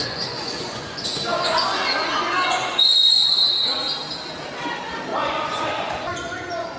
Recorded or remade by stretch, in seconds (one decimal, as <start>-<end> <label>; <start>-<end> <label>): 0.0-3.5 remade; 3.5-5.1 recorded; 5.1-6.8 remade